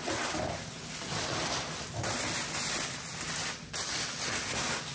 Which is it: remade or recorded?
recorded